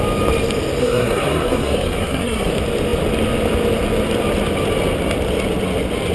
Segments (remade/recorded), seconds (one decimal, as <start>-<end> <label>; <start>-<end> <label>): 0.0-0.8 recorded; 0.8-2.5 remade; 2.5-6.1 recorded